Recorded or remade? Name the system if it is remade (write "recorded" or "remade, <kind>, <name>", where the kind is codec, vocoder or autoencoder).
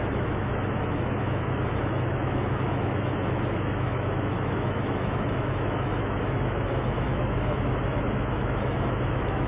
remade, autoencoder, DAC-VAE